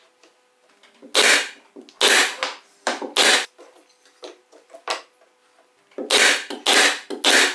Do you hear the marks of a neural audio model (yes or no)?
no